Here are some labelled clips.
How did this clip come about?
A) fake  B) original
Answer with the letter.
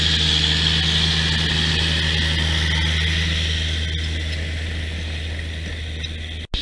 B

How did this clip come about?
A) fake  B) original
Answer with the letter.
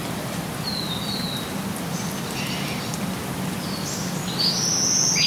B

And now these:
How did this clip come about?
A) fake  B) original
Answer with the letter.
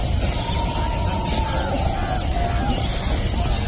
B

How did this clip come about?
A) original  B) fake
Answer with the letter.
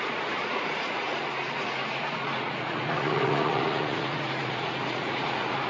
B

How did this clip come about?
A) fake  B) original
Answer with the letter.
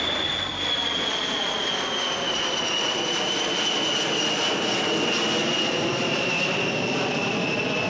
B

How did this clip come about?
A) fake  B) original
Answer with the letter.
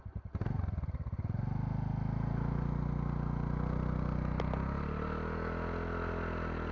B